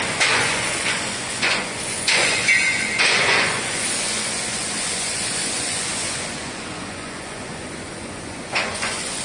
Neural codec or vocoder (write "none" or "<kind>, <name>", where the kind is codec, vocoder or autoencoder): vocoder, Vocos